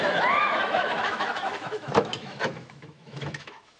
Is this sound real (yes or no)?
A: no